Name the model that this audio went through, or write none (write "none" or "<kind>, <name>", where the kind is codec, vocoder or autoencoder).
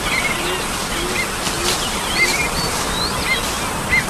none